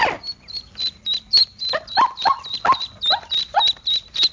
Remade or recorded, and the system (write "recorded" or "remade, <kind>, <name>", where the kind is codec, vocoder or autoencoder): recorded